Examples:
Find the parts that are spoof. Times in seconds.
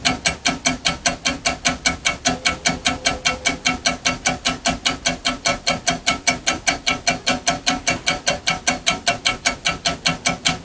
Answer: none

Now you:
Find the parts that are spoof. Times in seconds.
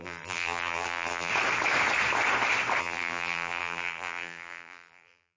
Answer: 0.0-1.3; 2.8-5.4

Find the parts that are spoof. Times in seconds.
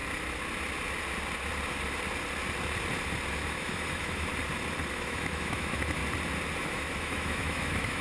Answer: 3.3-4.3; 4.9-6.0; 6.6-8.0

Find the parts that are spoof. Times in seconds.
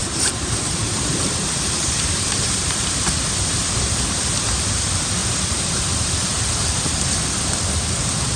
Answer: 0.0-2.8; 5.2-6.1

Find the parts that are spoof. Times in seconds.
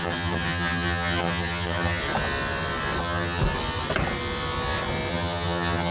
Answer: 0.0-2.0; 3.0-3.4; 5.1-5.9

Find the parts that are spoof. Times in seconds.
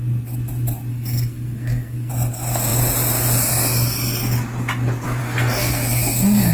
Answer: 0.9-2.1; 5.2-6.5